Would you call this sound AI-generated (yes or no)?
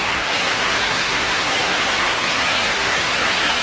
yes